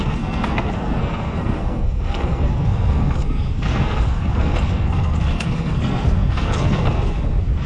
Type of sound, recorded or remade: remade